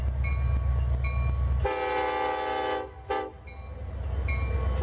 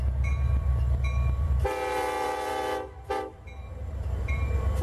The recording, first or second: first